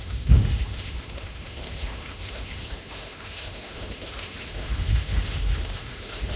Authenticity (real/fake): fake